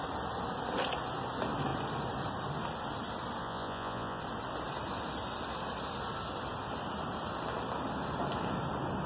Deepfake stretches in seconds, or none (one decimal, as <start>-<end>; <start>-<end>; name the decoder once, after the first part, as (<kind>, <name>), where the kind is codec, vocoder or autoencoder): 3.4-4.2 (vocoder, Vocos)